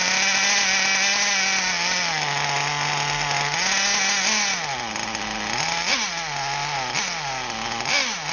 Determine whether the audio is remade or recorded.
recorded